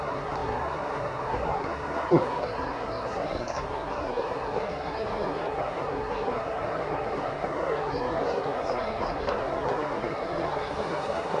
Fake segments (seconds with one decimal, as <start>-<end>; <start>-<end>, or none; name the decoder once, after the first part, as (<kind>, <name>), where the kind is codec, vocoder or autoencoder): 0.0-11.4 (codec, SNAC)